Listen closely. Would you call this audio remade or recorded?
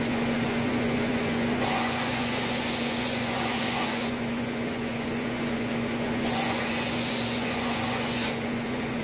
remade